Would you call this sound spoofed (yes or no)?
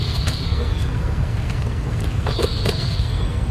yes